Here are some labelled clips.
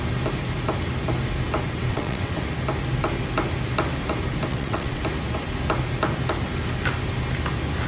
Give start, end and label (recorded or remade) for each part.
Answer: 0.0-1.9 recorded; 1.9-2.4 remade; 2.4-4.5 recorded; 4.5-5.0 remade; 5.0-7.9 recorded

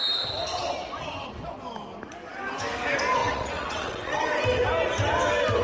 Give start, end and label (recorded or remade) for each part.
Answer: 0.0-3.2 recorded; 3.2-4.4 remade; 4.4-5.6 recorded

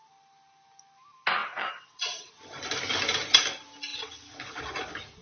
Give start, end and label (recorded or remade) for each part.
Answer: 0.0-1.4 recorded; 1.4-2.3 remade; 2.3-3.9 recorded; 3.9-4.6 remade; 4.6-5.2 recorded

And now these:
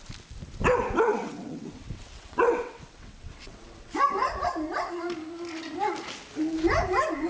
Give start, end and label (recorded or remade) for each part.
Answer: 0.0-1.1 recorded; 1.1-4.0 remade; 4.0-7.3 recorded

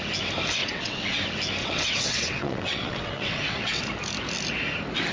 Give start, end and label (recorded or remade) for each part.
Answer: 0.0-0.6 recorded; 0.6-1.2 remade; 1.2-1.6 recorded; 1.6-3.8 remade; 3.8-5.1 recorded

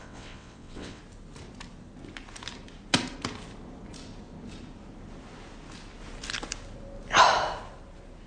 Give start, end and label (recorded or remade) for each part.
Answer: 0.0-1.0 remade; 1.0-8.3 recorded

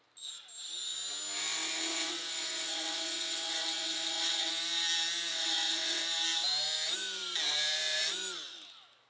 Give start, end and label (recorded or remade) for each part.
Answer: 0.0-1.9 recorded; 1.9-4.5 remade; 4.5-5.3 recorded; 5.3-6.0 remade; 6.0-9.1 recorded